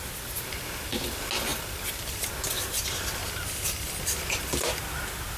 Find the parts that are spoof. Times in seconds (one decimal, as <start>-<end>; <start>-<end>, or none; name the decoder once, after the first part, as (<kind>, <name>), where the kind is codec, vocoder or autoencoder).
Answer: 3.2-4.8 (vocoder, BigVGAN v2)